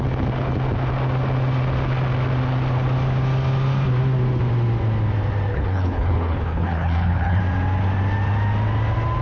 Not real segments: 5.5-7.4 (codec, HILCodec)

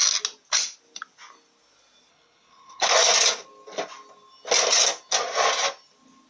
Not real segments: 2.1-2.9 (codec, HILCodec)

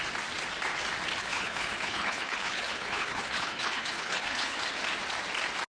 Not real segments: 1.2-4.6 (codec, HILCodec)